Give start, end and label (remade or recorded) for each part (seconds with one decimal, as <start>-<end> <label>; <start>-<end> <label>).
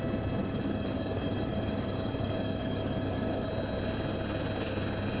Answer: 0.0-0.4 recorded; 0.4-3.5 remade; 3.5-5.2 recorded